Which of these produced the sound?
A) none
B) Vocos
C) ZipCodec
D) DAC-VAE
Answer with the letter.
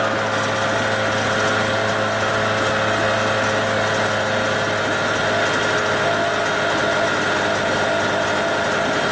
A